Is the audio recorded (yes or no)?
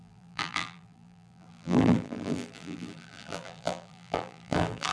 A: no